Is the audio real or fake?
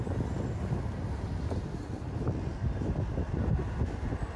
real